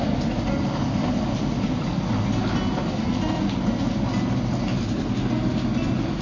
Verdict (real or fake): real